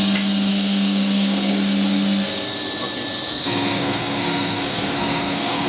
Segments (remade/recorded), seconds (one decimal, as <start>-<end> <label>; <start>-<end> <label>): 0.0-0.5 recorded; 0.5-1.5 remade; 1.5-3.3 recorded; 3.3-5.7 remade